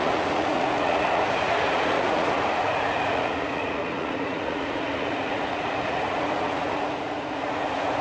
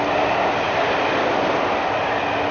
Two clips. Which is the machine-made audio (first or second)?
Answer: first